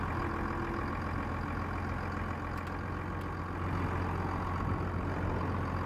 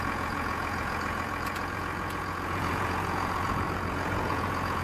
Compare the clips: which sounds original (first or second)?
first